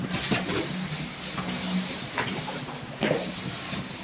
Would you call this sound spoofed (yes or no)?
no